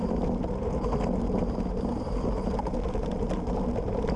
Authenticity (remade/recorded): recorded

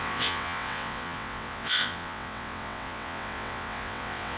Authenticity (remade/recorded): remade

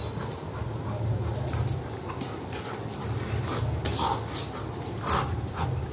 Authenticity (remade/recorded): recorded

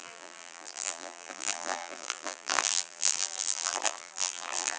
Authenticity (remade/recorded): remade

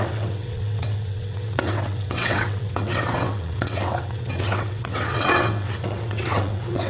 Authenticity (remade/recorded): remade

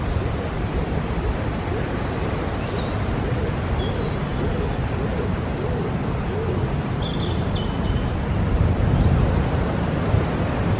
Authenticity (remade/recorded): recorded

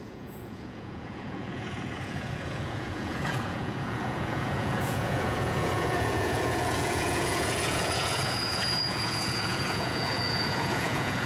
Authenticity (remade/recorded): remade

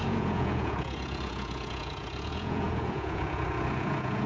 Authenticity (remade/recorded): remade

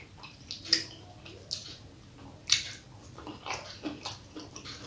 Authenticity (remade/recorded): recorded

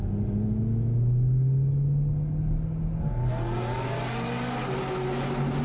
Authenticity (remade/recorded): recorded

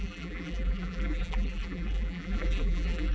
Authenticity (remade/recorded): remade